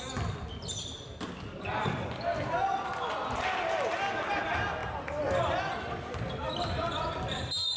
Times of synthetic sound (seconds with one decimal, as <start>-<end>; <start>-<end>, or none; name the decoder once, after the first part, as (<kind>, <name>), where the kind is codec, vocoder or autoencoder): none